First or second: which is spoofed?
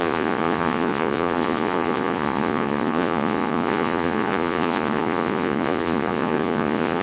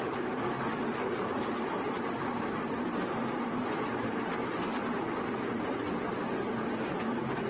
first